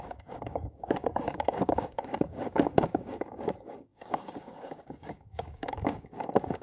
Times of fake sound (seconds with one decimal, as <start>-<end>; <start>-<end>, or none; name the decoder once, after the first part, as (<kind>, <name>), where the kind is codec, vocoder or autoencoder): 0.0-6.6 (codec, DAC)